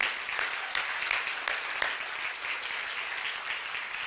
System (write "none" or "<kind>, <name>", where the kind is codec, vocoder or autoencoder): none